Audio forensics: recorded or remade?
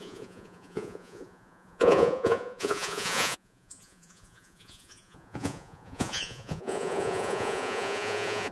remade